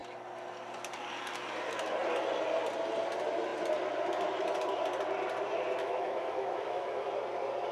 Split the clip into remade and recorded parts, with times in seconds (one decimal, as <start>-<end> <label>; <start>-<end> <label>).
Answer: 0.0-5.8 recorded; 5.8-7.1 remade; 7.1-7.7 recorded